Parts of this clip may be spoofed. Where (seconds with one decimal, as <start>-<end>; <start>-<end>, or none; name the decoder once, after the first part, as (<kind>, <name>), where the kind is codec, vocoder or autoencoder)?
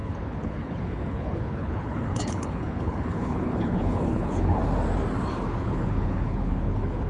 0.0-4.6 (codec, HILCodec); 5.6-7.1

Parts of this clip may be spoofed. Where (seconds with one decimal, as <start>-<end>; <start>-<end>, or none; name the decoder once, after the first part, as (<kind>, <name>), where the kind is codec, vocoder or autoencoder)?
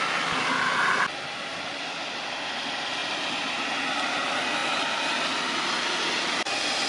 none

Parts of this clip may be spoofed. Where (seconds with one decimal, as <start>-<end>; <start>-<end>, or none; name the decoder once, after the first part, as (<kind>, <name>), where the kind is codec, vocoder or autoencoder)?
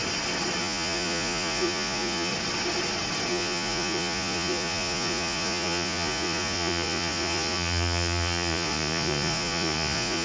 0.6-2.3 (vocoder, Vocos); 3.3-10.2